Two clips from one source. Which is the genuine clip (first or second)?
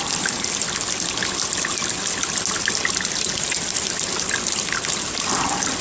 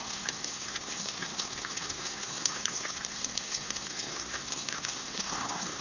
first